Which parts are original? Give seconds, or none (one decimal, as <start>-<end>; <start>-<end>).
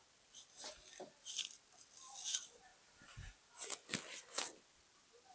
0.0-5.3